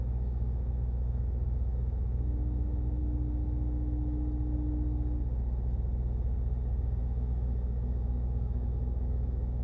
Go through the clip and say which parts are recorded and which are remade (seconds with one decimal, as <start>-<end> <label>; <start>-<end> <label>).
0.0-3.0 remade; 3.0-7.0 recorded; 7.0-9.6 remade